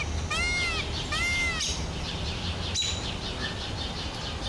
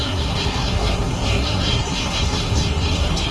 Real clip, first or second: first